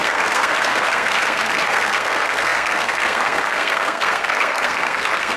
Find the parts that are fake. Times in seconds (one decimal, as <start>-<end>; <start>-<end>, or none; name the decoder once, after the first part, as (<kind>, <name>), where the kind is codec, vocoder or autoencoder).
0.0-5.4 (codec, SNAC)